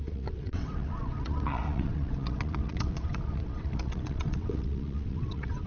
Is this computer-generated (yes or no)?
yes